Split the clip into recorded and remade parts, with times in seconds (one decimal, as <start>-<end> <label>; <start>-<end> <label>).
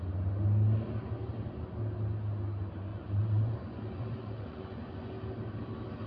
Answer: 0.0-2.9 recorded; 2.9-5.1 remade; 5.1-6.1 recorded